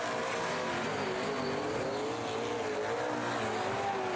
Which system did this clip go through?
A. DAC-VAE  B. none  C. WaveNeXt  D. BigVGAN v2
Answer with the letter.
B